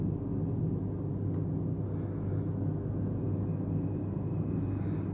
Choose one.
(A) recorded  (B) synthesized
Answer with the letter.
A